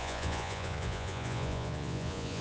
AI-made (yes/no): yes